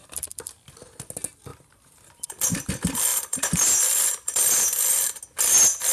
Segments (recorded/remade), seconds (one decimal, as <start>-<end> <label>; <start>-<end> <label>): 0.0-0.5 remade; 0.5-1.5 recorded; 1.5-2.7 remade; 2.7-3.1 recorded; 3.1-5.2 remade; 5.2-5.9 recorded